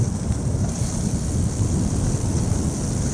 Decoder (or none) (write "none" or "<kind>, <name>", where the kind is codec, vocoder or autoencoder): none